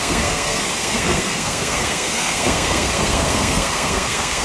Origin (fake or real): fake